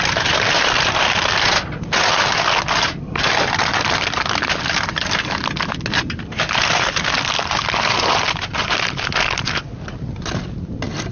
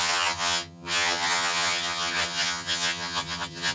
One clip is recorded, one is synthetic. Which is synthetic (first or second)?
second